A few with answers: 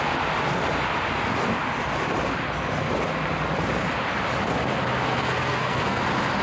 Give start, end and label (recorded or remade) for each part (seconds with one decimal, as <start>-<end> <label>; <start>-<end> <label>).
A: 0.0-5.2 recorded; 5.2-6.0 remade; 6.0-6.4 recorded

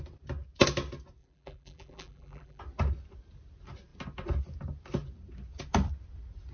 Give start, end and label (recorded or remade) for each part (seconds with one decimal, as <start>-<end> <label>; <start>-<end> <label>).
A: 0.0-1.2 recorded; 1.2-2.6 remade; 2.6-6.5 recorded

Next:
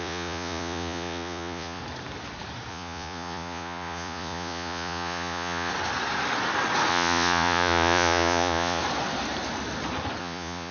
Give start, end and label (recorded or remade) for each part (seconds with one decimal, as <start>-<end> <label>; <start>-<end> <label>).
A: 0.0-1.8 remade; 1.8-2.7 recorded; 2.7-5.7 remade; 5.7-6.9 recorded; 6.9-8.8 remade; 8.8-10.2 recorded; 10.2-10.7 remade

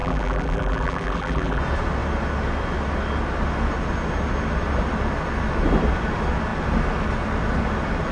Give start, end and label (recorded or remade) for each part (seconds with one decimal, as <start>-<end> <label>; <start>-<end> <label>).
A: 0.0-1.6 remade; 1.6-8.1 recorded

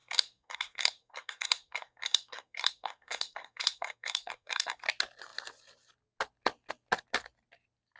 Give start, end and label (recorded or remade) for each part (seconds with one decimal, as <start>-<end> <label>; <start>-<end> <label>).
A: 0.0-4.8 remade; 4.8-8.0 recorded